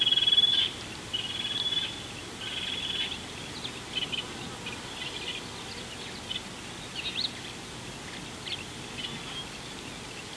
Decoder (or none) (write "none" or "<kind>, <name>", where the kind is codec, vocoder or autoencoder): none